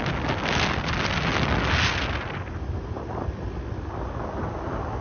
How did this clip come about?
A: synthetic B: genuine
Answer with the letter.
B